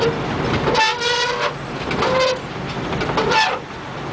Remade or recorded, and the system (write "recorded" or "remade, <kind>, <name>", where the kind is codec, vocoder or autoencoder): recorded